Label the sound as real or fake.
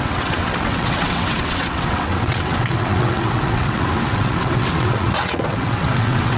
fake